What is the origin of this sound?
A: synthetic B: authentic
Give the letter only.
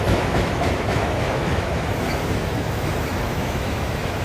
A